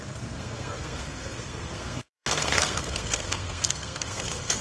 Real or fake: fake